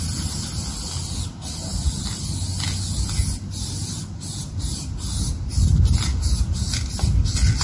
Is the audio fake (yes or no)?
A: no